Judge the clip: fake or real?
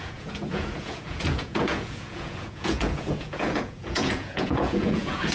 fake